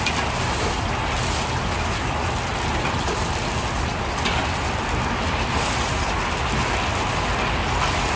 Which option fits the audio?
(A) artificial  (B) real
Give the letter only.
B